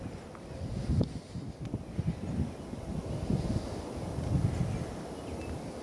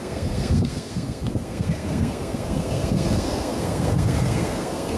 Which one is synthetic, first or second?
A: second